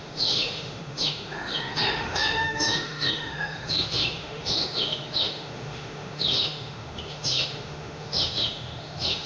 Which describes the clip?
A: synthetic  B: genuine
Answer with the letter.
A